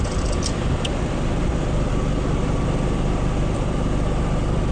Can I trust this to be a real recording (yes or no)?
no